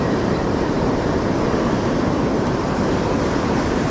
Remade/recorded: remade